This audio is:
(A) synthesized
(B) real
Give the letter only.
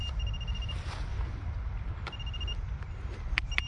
B